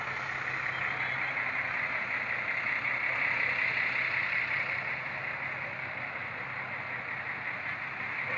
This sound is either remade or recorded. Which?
recorded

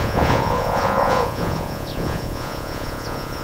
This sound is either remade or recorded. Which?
remade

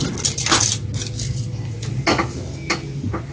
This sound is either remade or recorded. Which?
recorded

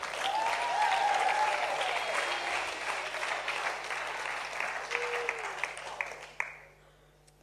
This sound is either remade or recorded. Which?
recorded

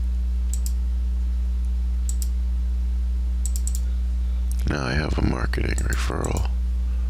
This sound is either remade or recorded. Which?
recorded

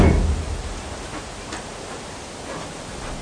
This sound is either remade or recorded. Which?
recorded